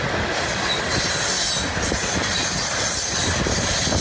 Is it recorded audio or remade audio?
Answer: recorded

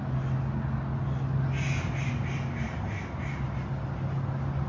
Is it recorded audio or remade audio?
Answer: recorded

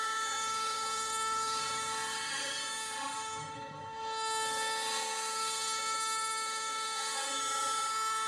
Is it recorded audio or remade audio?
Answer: remade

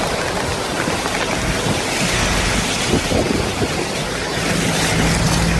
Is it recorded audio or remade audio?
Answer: recorded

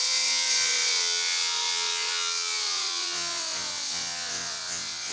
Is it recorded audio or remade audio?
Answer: remade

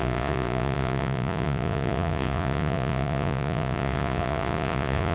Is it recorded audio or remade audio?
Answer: remade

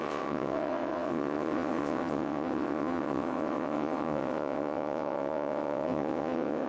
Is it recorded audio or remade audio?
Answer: remade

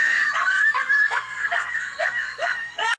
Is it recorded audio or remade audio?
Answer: remade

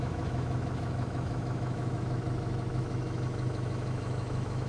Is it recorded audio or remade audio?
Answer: remade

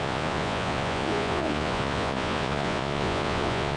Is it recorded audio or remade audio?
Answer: remade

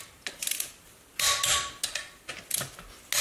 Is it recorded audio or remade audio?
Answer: recorded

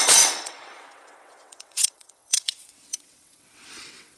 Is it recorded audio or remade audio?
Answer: remade